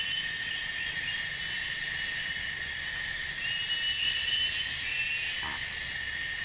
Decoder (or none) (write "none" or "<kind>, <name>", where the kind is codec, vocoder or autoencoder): none